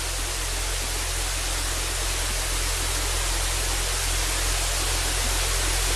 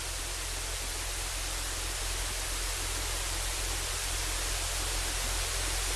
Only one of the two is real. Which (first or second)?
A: first